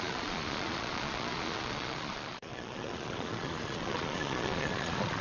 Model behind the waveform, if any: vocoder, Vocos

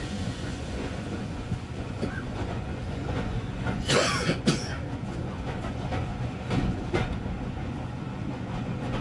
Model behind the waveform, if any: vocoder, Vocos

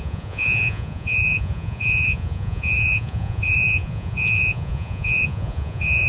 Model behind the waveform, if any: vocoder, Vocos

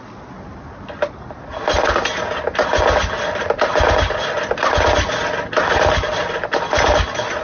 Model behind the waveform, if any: none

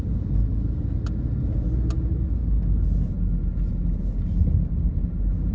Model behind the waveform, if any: none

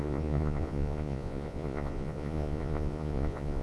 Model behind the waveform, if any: vocoder, Vocos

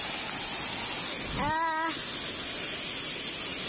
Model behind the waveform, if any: none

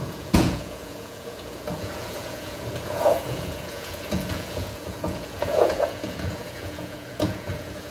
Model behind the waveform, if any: vocoder, Vocos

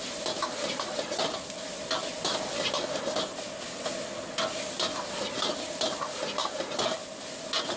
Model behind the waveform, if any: none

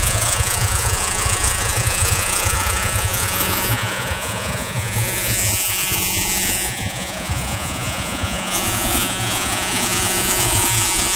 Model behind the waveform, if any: vocoder, Vocos